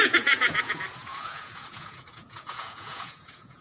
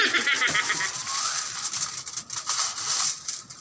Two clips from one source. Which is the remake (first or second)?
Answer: first